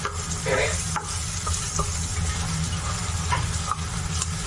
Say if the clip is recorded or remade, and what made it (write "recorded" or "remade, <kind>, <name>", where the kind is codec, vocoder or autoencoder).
recorded